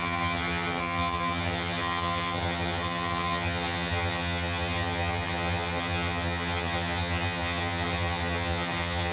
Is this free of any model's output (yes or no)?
no